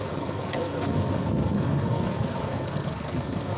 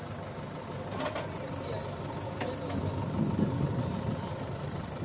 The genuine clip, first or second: second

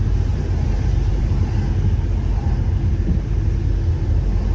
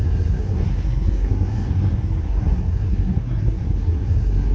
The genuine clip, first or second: first